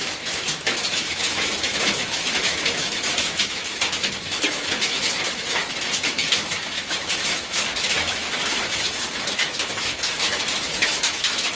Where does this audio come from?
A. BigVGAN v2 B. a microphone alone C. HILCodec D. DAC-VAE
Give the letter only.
D